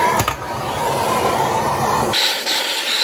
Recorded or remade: recorded